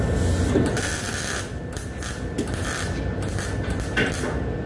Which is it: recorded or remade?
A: recorded